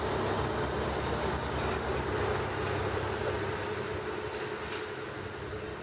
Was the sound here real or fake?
real